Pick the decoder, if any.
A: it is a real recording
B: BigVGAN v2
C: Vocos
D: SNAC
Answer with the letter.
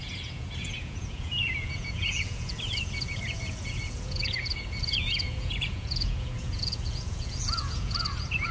C